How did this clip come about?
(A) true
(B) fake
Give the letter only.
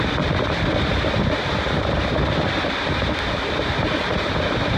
A